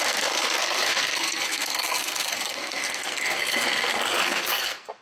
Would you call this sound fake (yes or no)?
yes